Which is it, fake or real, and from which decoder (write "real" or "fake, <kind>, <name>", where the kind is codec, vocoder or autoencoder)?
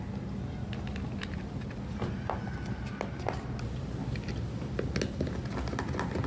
real